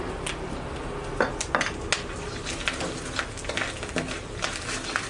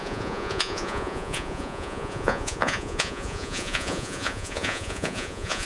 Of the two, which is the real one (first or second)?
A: first